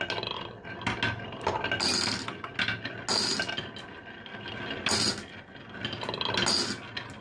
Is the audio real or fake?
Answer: real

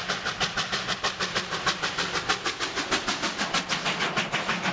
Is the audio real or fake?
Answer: real